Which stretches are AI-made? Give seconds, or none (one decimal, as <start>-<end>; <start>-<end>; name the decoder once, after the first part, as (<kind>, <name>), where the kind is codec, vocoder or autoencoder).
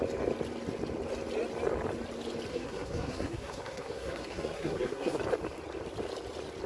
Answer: 2.5-5.2 (codec, SNAC)